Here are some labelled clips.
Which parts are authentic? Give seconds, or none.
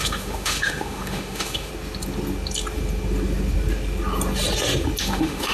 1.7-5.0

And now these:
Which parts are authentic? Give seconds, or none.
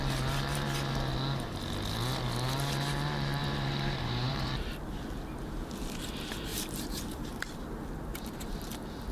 0.0-3.4; 4.5-6.5; 7.3-8.1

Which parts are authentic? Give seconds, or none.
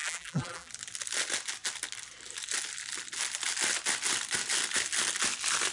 0.7-5.7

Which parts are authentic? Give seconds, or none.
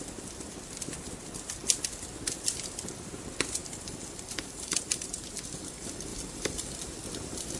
0.0-3.6; 5.1-6.1; 6.7-7.6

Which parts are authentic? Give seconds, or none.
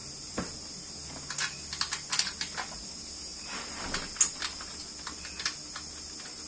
0.0-6.5